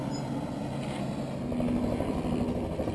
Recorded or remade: recorded